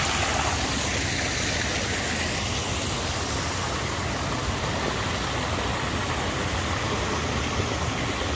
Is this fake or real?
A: real